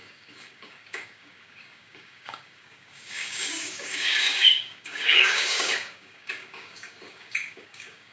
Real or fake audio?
fake